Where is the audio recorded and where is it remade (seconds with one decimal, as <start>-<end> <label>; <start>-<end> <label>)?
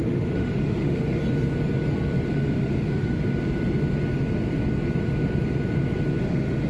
0.0-1.2 remade; 1.2-2.3 recorded; 2.3-3.2 remade; 3.2-6.2 recorded; 6.2-6.7 remade